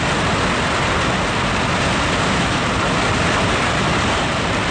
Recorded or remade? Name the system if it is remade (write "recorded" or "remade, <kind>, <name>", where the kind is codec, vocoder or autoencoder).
recorded